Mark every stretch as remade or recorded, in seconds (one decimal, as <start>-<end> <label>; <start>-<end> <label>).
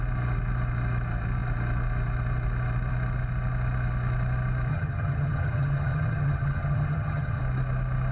0.0-4.7 recorded; 4.7-7.4 remade; 7.4-8.1 recorded